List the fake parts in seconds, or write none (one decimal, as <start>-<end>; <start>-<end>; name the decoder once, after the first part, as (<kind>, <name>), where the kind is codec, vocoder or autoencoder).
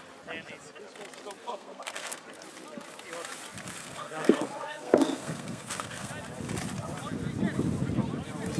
1.4-2.2 (codec, SNAC); 3.8-6.1